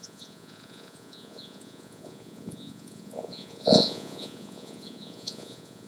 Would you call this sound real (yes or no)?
no